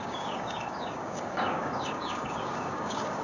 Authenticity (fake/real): fake